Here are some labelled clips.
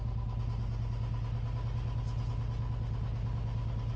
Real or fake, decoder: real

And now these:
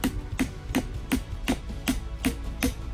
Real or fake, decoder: real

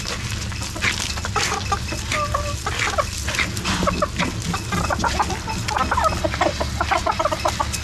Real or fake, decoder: real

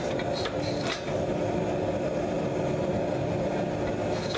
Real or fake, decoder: real